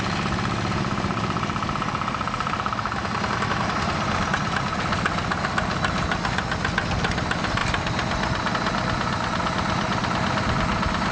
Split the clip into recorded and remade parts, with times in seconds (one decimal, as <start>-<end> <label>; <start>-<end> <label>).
0.0-11.1 recorded